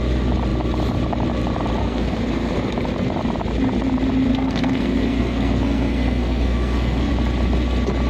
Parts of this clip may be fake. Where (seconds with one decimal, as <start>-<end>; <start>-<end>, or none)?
1.8-2.7; 4.3-7.1